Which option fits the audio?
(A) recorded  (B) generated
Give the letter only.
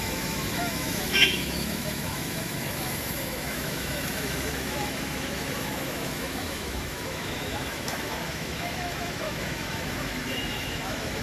B